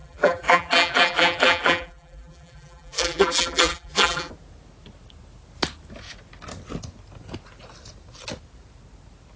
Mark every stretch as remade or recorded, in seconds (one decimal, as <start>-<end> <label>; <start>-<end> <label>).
0.0-4.3 remade; 4.3-9.4 recorded